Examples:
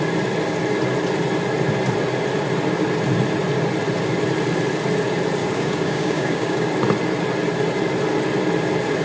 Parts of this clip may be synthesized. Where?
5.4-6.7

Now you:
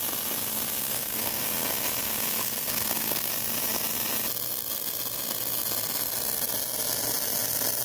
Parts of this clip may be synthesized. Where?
0.8-1.4; 2.4-3.3

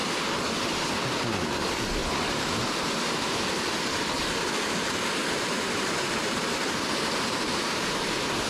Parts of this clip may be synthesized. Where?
5.2-7.9

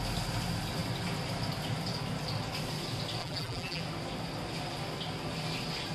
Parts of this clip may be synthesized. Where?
3.2-3.8